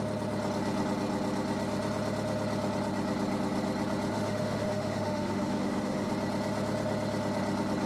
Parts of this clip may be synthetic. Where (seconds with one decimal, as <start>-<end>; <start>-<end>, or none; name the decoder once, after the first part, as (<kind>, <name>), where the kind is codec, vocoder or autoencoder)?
4.1-6.1 (autoencoder, DAC-VAE)